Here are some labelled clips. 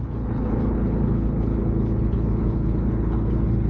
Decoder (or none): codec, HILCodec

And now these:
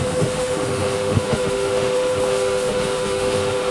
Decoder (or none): autoencoder, DAC-VAE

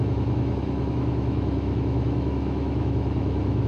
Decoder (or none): autoencoder, DAC-VAE